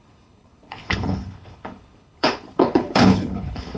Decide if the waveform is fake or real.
fake